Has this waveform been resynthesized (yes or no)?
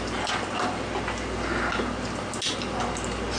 no